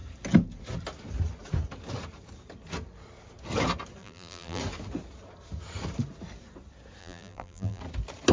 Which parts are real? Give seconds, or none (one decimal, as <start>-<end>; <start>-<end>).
0.0-4.0; 4.6-7.0; 7.8-8.3